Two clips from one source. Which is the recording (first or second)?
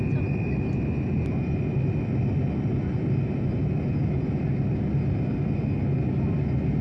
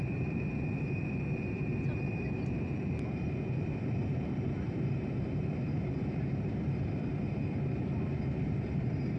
first